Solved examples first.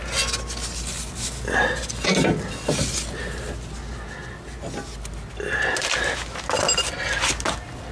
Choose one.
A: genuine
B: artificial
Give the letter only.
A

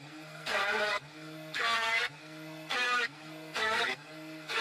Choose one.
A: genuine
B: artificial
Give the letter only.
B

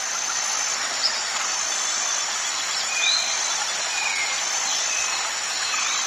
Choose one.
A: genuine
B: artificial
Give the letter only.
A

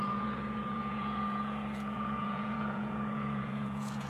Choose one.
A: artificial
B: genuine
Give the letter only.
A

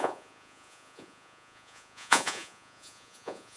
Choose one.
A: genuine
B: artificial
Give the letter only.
B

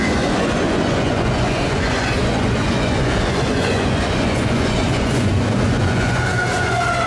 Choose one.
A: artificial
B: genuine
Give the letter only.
A